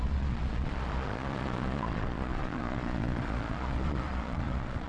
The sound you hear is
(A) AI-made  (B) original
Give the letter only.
A